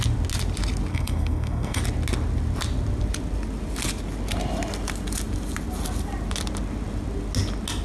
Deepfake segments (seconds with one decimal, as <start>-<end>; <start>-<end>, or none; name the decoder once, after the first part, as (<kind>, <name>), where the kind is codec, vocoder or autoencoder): 0.9-1.8 (codec, SNAC)